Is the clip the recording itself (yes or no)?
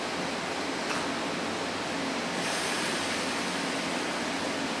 yes